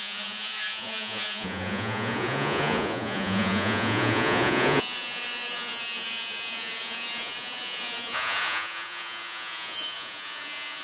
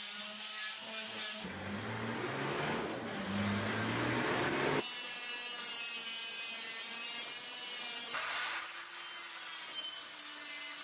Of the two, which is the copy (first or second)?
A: first